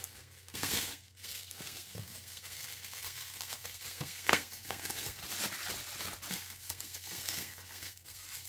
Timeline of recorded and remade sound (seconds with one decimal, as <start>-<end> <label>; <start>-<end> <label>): 0.0-5.2 remade; 5.2-6.3 recorded; 6.3-8.5 remade